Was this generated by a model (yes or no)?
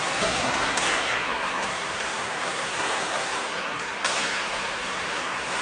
yes